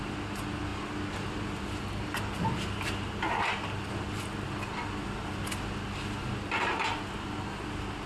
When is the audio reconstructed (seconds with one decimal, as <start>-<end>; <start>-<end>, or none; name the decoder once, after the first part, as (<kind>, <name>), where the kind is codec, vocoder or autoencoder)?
none